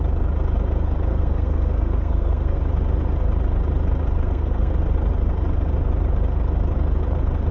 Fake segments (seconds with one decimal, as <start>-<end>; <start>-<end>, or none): 1.1-2.6; 4.2-4.7